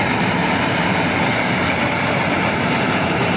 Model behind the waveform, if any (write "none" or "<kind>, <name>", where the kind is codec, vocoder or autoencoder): vocoder, BigVGAN v2